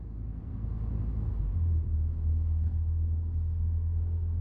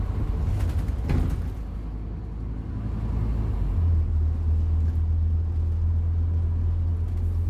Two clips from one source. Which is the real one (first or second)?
second